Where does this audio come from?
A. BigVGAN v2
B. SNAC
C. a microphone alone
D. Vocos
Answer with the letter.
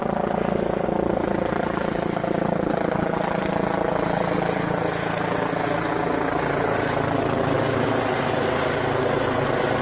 C